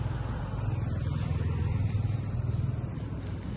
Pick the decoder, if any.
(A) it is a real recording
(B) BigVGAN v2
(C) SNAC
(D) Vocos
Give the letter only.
B